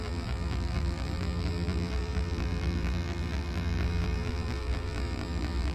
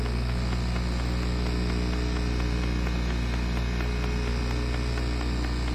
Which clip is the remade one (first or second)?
first